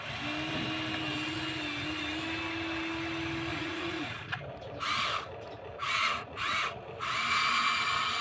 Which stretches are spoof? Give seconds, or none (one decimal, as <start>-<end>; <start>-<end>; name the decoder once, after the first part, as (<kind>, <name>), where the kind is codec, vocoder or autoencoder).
3.5-4.4 (vocoder, Vocos); 5.8-6.8